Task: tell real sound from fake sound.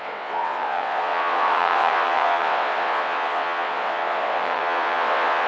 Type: fake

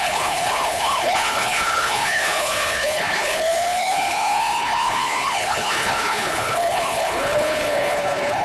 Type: fake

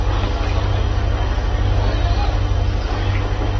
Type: real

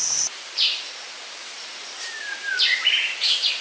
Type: fake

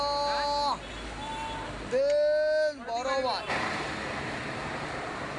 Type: real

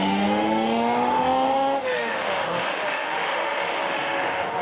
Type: fake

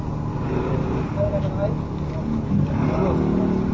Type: real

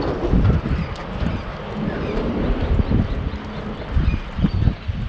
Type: real